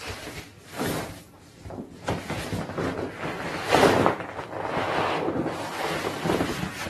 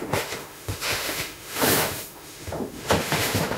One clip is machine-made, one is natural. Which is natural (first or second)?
first